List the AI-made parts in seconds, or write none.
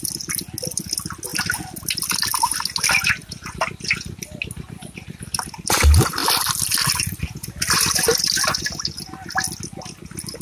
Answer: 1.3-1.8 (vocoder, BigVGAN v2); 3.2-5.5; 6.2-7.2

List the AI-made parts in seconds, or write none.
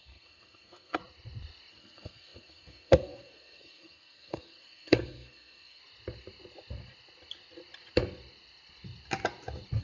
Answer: 0.0-1.0 (codec, SNAC); 1.7-5.8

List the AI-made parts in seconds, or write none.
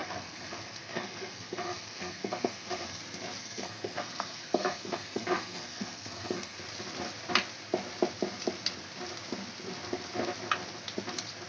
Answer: 0.0-3.0 (codec, SNAC); 3.4-6.6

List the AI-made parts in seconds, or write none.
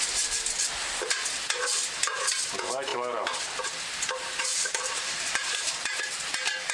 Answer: 4.5-6.0 (vocoder, BigVGAN v2)